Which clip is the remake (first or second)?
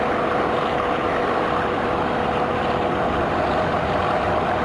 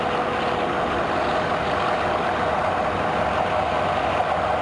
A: first